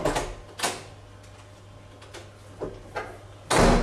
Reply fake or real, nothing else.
real